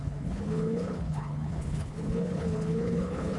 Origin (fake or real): fake